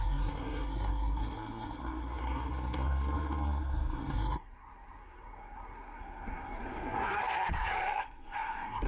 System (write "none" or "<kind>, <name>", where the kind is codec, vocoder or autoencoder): codec, SNAC